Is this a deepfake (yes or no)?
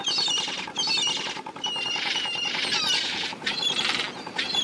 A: no